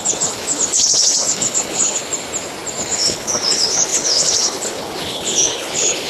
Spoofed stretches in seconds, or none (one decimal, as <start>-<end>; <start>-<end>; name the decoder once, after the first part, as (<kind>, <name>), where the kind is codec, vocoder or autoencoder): 0.0-2.0 (codec, HILCodec); 2.8-6.1